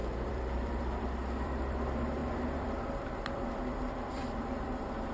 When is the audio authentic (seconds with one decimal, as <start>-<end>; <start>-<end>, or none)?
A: none

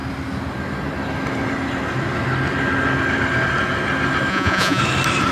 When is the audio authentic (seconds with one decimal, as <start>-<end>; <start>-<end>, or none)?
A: 0.0-4.3; 4.8-5.3

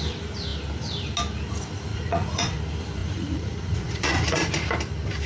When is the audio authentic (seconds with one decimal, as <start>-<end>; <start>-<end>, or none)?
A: 0.0-1.9; 2.6-3.0; 4.5-5.3

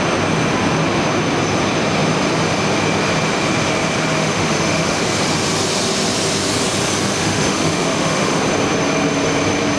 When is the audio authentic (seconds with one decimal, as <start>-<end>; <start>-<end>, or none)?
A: 0.0-4.2; 5.0-7.1; 8.4-9.8

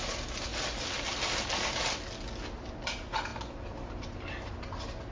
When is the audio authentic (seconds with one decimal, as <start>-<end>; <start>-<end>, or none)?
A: 0.0-5.1

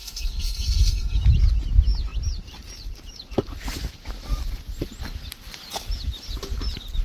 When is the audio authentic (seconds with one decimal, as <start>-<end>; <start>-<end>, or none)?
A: 1.2-7.0

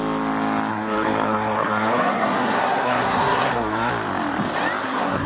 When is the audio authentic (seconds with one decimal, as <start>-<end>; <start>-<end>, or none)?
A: 0.0-0.7; 3.9-4.8